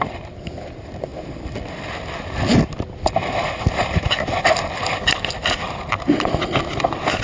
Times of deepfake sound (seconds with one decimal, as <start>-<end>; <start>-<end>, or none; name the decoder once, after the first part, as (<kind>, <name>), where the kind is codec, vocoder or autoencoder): none